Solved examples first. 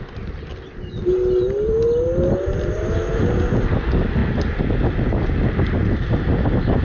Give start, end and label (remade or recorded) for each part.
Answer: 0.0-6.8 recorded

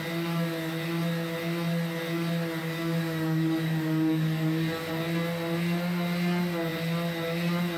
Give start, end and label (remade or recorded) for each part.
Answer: 0.0-2.6 recorded; 2.6-4.9 remade; 4.9-7.8 recorded

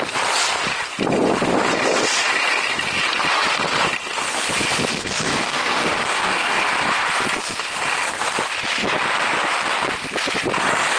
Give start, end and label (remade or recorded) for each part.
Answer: 0.0-4.9 recorded; 4.9-6.7 remade; 6.7-11.0 recorded